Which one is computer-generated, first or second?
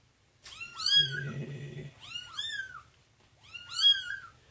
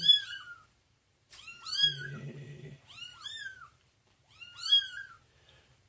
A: second